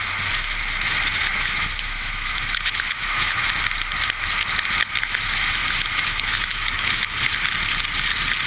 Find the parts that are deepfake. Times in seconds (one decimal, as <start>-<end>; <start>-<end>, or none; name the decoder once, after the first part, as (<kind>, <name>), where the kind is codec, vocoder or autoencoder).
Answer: 1.3-3.5 (autoencoder, DAC-VAE); 5.6-7.2